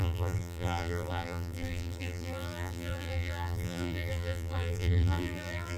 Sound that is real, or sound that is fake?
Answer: fake